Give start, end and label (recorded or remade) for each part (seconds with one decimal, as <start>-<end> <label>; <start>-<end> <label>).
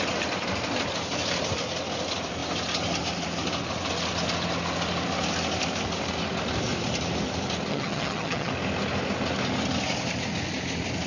0.0-7.7 recorded; 7.7-8.5 remade; 8.5-11.1 recorded